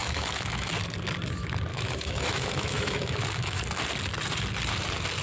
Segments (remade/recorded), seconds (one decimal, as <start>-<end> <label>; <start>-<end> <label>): 0.0-0.7 remade; 0.7-1.7 recorded; 1.7-3.6 remade; 3.6-5.2 recorded